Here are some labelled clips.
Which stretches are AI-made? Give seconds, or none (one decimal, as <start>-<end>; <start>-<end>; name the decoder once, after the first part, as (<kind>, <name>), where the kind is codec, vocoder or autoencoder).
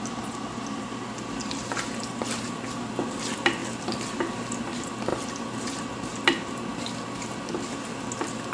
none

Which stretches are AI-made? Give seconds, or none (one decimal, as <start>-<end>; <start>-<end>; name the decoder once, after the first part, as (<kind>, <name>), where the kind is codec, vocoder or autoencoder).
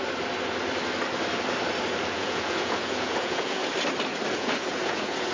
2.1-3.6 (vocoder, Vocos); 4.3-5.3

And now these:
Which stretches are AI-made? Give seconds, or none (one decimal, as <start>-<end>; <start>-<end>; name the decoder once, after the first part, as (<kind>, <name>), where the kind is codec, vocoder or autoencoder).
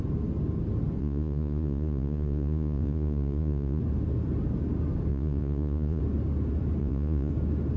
1.0-3.8 (vocoder, Vocos); 5.1-6.0; 6.8-7.3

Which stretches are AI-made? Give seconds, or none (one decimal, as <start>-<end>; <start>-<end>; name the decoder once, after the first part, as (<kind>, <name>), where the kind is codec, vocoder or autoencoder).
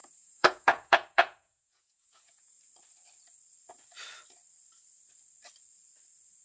0.0-2.6 (vocoder, Vocos)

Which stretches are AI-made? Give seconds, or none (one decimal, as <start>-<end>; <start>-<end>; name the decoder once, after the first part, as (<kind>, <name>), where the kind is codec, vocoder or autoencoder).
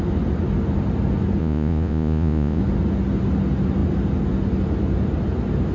1.4-2.6 (vocoder, Vocos)